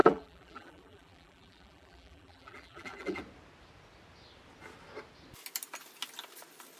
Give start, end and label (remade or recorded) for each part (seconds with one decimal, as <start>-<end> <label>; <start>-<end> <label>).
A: 0.0-3.2 remade; 3.2-6.8 recorded